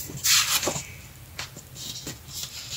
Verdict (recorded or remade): recorded